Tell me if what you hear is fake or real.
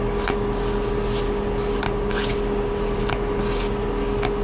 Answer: real